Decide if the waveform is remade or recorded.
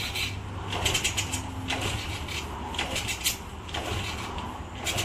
recorded